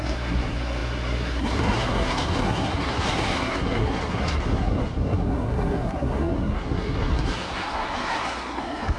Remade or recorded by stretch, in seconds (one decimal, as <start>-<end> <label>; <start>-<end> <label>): 0.0-9.0 remade